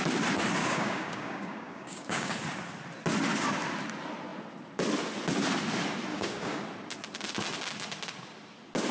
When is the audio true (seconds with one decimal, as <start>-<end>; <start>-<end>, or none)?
0.0-0.6; 2.3-6.1; 6.6-8.9